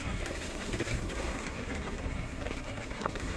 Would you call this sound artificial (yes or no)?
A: yes